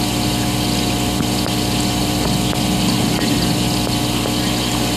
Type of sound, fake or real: real